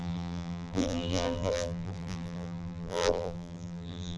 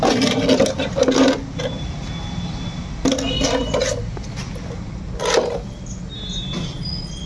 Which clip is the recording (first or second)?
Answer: second